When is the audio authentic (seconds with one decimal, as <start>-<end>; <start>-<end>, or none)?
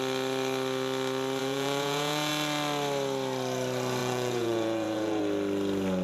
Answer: 0.0-1.4; 2.3-4.0; 5.2-6.0